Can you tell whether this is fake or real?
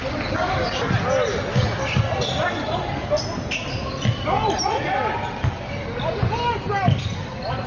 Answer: real